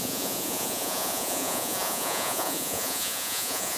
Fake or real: fake